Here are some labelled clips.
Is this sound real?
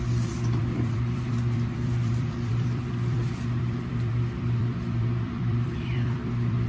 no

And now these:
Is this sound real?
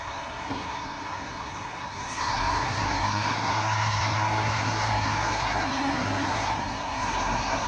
no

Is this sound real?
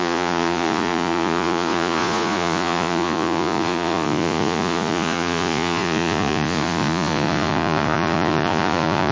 no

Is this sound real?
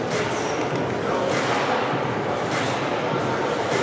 yes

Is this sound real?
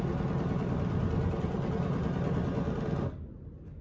yes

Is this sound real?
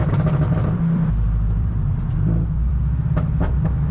no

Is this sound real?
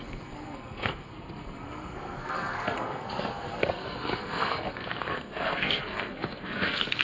no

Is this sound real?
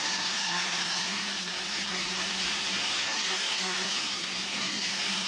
no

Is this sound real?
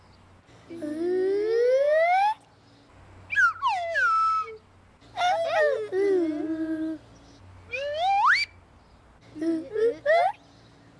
yes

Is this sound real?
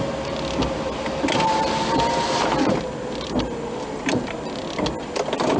yes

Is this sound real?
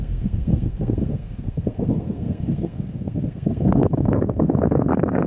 no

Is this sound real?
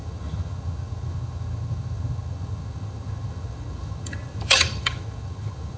no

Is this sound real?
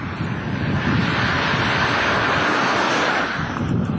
yes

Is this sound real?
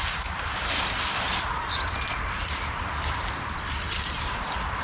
no